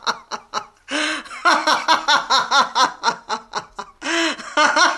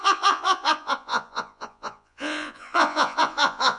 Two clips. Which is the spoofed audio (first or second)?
second